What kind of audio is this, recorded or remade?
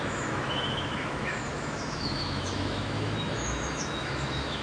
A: remade